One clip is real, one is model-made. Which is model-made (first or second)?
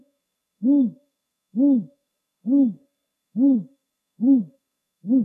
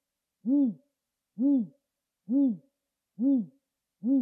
first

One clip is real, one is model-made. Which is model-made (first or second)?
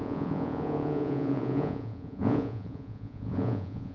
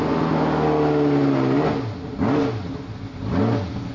first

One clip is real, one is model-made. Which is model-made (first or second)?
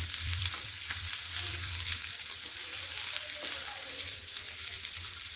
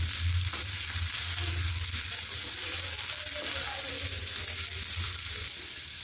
first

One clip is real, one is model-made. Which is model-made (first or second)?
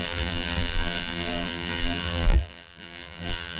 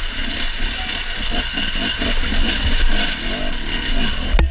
first